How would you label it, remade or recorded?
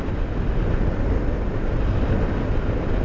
recorded